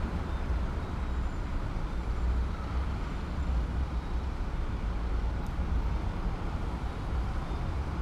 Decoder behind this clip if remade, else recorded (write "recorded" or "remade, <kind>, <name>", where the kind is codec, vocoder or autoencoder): recorded